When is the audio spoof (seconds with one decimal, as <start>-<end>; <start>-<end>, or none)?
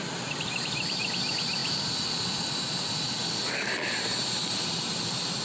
none